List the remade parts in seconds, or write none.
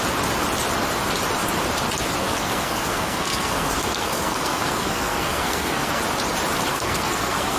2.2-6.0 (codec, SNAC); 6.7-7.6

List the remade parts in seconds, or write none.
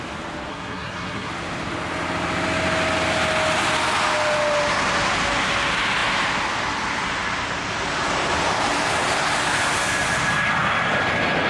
0.5-1.3 (codec, SNAC)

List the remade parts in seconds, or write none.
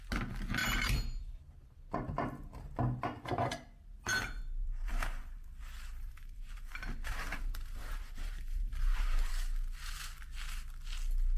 0.6-1.4 (vocoder, BigVGAN v2); 4.1-9.3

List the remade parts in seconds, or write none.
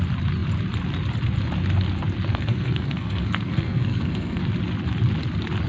2.3-4.4 (codec, SNAC)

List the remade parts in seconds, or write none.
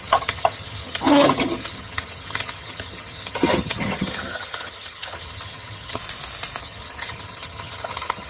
0.0-6.0 (vocoder, HiFi-GAN); 6.6-8.3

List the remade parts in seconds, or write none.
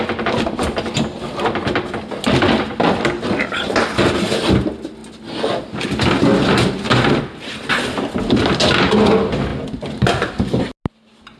none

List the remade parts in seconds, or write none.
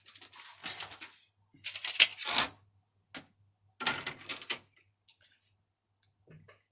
none